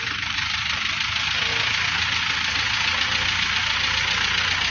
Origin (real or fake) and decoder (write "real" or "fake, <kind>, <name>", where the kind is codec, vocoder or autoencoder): real